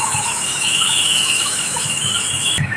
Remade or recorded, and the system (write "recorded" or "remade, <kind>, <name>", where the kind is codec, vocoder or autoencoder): remade, autoencoder, DAC-VAE